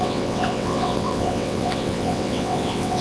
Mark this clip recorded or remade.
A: remade